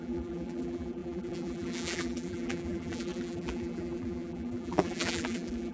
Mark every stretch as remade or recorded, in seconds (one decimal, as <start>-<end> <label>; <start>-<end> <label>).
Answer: 0.0-5.7 remade